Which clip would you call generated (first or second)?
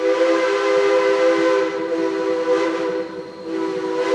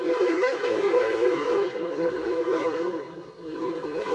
second